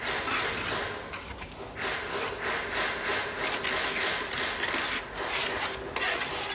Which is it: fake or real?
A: real